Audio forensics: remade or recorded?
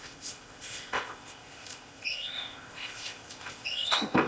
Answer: remade